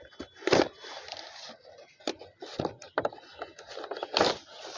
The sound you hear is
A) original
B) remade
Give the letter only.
A